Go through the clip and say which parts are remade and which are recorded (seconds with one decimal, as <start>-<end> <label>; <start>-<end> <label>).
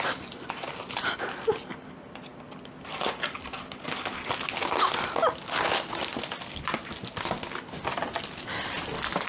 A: 0.0-9.3 recorded